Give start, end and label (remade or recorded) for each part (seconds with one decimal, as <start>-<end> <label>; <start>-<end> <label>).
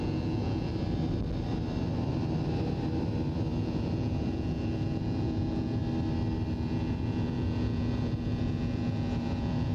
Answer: 0.0-0.7 remade; 0.7-3.6 recorded; 3.6-5.8 remade; 5.8-6.5 recorded; 6.5-9.7 remade